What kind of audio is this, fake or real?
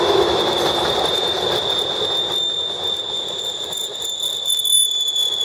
real